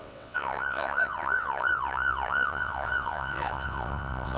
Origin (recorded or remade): remade